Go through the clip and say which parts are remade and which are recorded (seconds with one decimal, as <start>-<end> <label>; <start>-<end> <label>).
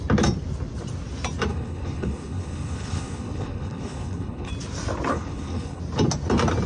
0.0-1.5 recorded; 1.5-4.5 remade; 4.5-5.1 recorded; 5.1-5.8 remade; 5.8-6.7 recorded